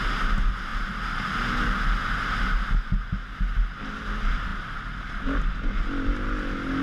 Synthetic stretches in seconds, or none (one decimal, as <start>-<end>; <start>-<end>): none